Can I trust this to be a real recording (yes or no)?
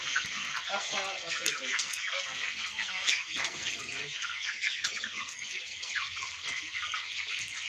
no